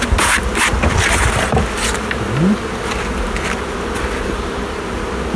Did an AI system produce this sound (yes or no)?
no